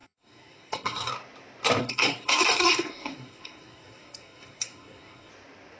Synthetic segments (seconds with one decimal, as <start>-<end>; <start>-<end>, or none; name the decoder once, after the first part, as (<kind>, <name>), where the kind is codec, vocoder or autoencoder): 0.0-1.1 (codec, SNAC); 1.8-5.3

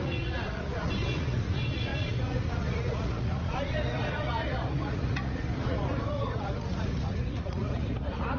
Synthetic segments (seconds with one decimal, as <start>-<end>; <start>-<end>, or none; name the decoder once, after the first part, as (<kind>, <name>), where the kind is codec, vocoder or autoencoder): 0.0-8.4 (vocoder, Vocos)

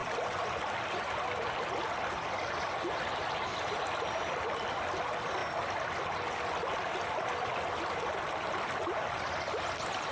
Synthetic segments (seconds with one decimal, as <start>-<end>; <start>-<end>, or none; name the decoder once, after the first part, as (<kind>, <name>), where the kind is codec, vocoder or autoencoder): none

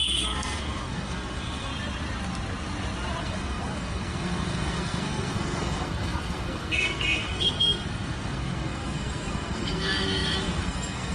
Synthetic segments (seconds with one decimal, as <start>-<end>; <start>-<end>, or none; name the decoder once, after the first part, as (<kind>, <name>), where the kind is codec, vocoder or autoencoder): 0.0-1.7 (codec, SNAC); 3.2-11.1

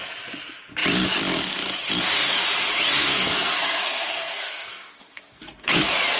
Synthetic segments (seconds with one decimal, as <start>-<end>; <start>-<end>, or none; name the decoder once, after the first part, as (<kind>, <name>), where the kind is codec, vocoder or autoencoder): 3.1-5.7 (codec, SNAC)

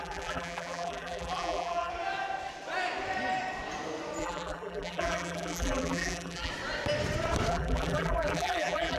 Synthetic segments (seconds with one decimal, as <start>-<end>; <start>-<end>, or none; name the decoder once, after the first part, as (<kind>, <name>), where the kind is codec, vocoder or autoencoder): 0.0-1.9 (vocoder, BigVGAN v2); 4.2-6.5; 7.5-9.0

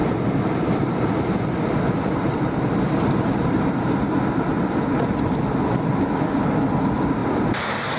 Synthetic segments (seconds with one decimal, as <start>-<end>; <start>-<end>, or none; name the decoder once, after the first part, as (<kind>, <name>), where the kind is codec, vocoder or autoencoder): 0.0-3.7 (vocoder, BigVGAN v2); 7.2-8.0